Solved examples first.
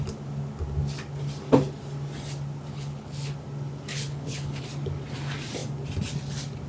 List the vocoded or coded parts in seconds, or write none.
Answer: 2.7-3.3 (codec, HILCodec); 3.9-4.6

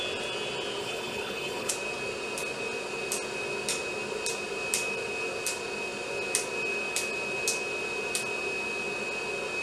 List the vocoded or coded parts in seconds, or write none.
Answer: 0.8-1.7 (codec, HILCodec)

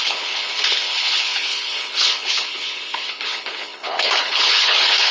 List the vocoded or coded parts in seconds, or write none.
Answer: 0.0-5.1 (codec, HILCodec)

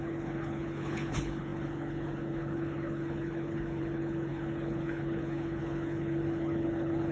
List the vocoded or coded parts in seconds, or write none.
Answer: 0.0-7.1 (codec, HILCodec)